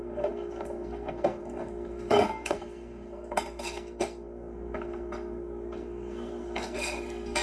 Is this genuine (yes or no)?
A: no